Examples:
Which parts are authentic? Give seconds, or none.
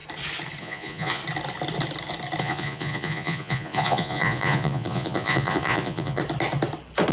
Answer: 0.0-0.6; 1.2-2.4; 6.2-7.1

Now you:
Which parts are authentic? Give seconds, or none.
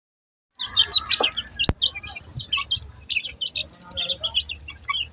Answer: 0.0-5.1